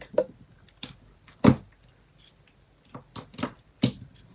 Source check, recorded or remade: recorded